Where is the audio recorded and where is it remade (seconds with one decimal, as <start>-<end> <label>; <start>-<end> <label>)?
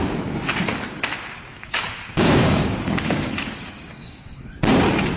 0.0-1.5 recorded; 1.5-4.6 remade; 4.6-5.2 recorded